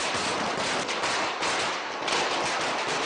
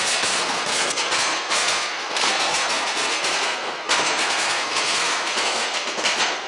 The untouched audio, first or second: first